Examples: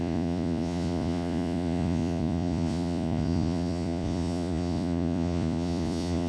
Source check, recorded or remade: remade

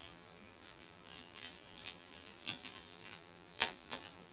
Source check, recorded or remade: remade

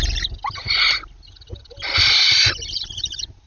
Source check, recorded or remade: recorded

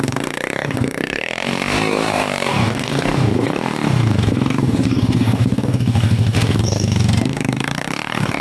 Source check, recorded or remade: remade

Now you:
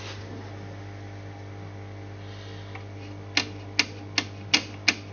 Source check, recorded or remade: recorded